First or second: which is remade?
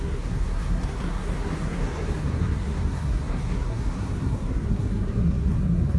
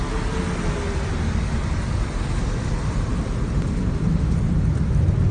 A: first